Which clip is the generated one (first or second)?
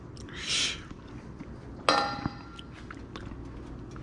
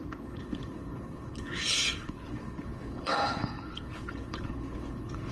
second